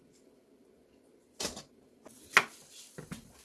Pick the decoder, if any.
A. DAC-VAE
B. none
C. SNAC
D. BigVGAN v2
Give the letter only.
B